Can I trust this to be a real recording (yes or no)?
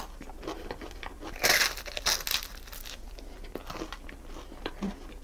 yes